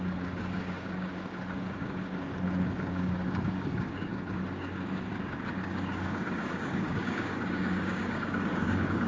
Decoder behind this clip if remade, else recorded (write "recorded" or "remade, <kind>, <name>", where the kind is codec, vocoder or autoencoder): remade, codec, DAC